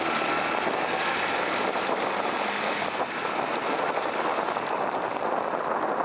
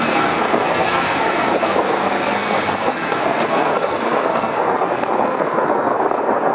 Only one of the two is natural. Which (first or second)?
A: first